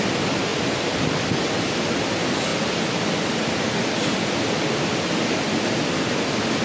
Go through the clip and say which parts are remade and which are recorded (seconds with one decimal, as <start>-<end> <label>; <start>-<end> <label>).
0.0-6.6 recorded